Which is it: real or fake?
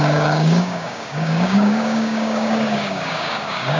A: fake